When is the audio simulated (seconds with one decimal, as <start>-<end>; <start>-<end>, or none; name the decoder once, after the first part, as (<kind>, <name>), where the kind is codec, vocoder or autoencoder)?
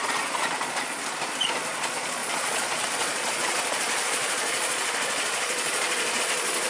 0.0-1.0 (vocoder, Vocos); 1.5-6.7